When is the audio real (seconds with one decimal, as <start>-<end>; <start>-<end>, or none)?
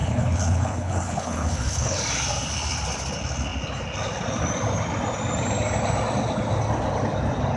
2.0-7.6